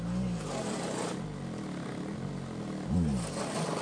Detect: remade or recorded recorded